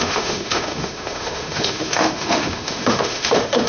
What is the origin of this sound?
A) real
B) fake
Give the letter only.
B